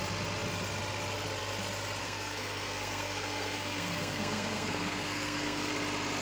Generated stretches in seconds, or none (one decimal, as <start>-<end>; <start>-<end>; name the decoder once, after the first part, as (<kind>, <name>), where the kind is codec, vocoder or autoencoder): 2.0-5.7 (codec, SNAC)